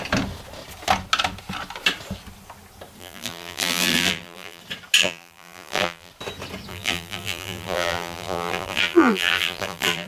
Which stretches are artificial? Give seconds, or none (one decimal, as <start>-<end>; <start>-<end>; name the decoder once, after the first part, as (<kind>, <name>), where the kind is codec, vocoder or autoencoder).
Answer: 3.0-4.6 (vocoder, BigVGAN v2); 5.0-6.1; 6.7-10.1